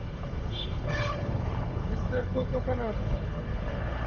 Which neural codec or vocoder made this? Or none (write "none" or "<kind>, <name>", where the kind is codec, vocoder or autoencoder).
codec, HILCodec